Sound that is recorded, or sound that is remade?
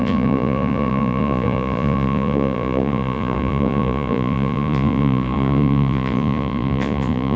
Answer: remade